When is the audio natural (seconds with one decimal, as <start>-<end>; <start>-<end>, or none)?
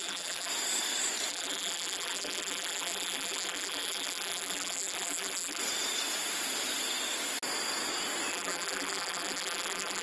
0.5-1.3; 5.6-8.3